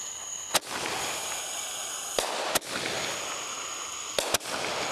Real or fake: real